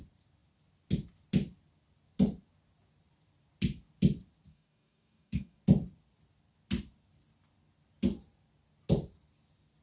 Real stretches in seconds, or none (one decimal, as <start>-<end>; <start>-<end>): 0.0-4.5; 5.6-9.8